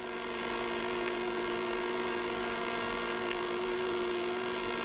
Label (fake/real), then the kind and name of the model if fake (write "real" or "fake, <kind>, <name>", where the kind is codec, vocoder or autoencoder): fake, vocoder, BigVGAN v2